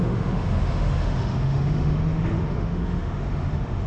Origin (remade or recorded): remade